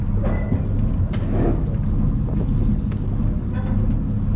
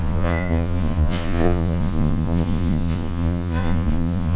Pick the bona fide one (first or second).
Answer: first